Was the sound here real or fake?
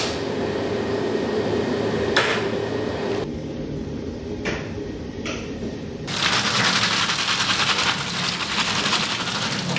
real